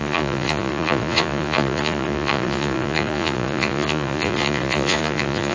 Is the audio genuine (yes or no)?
no